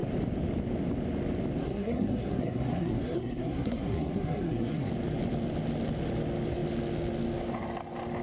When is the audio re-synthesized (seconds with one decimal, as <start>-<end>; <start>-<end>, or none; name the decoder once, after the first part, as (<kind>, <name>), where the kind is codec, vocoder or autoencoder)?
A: 1.6-4.9 (codec, SNAC)